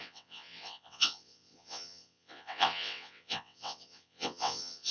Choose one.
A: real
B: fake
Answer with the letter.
B